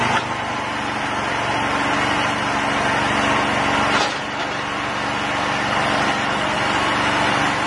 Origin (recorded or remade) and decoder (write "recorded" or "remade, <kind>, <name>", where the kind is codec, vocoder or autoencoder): recorded